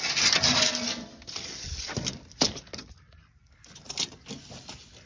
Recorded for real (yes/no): yes